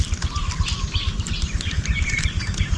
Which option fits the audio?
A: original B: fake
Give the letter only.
B